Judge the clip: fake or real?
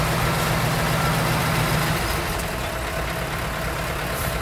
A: real